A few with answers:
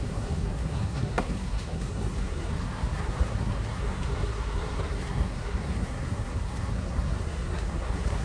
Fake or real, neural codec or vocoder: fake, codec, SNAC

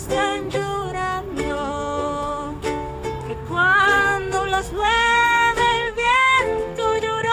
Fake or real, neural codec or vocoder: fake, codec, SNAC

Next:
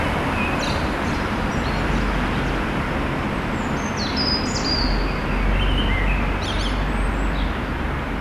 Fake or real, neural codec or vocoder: real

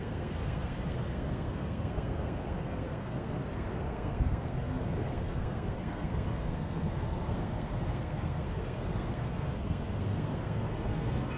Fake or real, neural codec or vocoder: fake, codec, SNAC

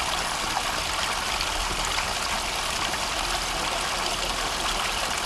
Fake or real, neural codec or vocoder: real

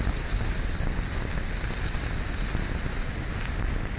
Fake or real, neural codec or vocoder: real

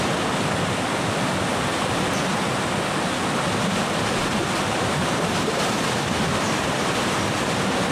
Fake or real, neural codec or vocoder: real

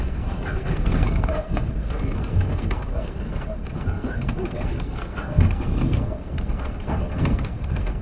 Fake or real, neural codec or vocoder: fake, codec, SNAC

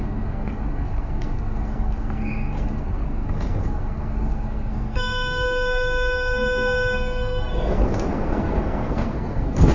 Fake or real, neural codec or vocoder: fake, codec, SNAC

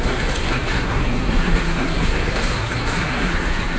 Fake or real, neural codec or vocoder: fake, codec, SNAC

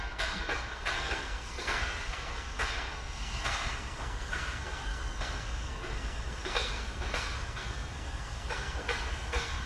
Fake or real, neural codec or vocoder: fake, codec, SNAC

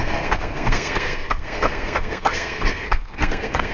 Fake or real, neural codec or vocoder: fake, codec, SNAC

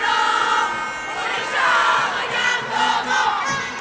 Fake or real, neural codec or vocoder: real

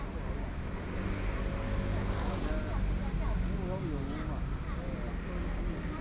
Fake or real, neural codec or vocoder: real